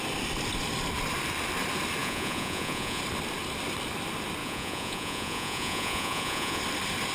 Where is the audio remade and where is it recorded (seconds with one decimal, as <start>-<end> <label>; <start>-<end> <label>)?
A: 0.0-2.0 recorded; 2.0-3.0 remade; 3.0-4.4 recorded; 4.4-6.6 remade; 6.6-7.1 recorded